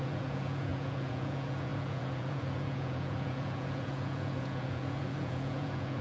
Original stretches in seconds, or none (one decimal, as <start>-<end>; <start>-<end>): none